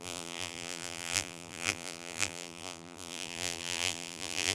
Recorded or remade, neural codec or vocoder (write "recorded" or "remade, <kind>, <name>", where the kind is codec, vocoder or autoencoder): remade, vocoder, BigVGAN v2